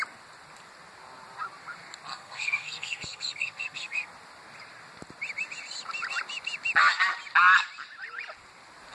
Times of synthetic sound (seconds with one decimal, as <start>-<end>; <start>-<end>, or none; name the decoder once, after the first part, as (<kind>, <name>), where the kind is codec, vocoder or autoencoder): 2.1-4.1 (codec, SNAC)